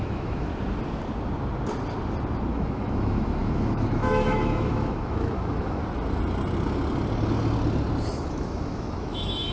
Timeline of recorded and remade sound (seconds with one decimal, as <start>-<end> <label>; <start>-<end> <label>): 0.0-0.5 remade; 0.5-2.5 recorded; 2.5-5.8 remade; 5.8-8.1 recorded; 8.1-9.5 remade